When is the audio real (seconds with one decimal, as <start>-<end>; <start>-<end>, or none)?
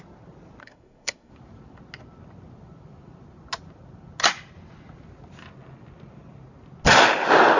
0.0-0.6; 1.3-7.6